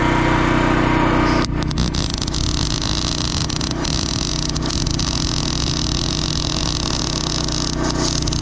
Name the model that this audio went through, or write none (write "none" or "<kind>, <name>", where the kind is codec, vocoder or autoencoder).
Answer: none